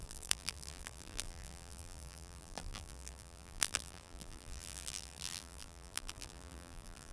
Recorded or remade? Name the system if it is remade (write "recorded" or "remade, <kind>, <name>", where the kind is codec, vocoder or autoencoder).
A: remade, vocoder, BigVGAN v2